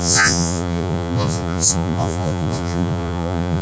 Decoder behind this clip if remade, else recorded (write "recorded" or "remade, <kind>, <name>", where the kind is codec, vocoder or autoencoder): remade, vocoder, Vocos